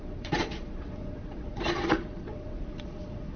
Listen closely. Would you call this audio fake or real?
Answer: fake